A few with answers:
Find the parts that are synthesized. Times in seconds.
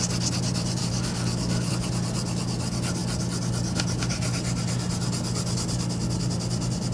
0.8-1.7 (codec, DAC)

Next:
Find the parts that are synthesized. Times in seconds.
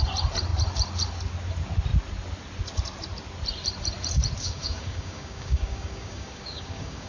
4.4-7.1 (codec, DAC)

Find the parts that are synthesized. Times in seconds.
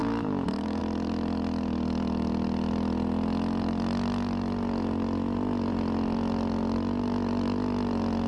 0.0-0.8 (codec, DAC)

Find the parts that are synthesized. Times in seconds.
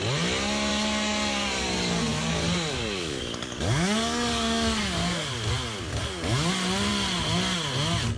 0.7-5.3 (codec, DAC); 5.9-6.5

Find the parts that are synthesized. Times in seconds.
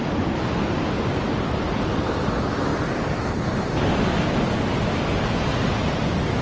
none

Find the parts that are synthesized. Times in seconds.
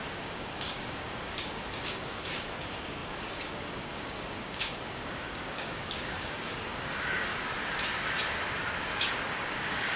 0.0-7.3 (codec, DAC); 8.8-10.0